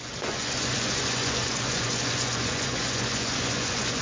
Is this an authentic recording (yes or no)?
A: no